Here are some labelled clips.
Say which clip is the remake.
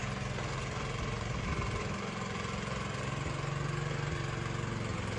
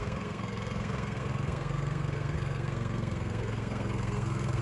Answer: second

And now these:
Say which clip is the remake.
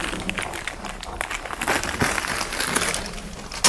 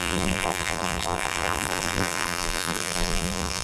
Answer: second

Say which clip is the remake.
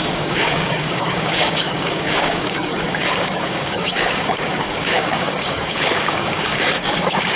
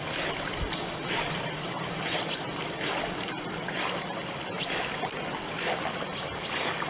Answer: first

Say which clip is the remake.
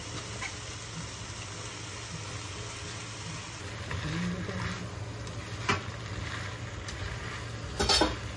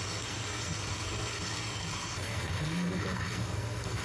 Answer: second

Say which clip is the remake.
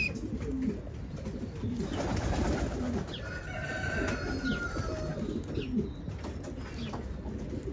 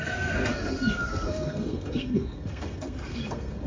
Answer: second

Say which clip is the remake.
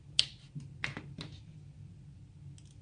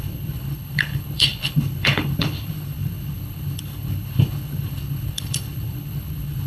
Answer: second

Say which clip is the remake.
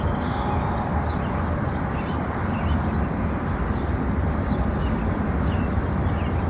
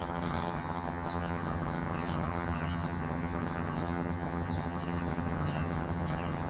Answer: second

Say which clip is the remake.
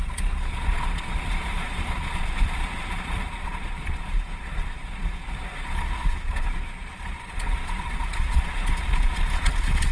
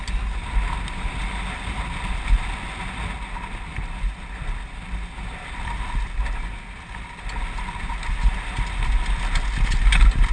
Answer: first